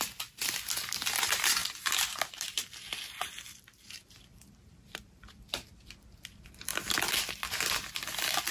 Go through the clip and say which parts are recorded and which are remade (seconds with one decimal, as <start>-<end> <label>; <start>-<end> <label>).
0.0-1.6 recorded; 1.6-5.9 remade; 5.9-8.5 recorded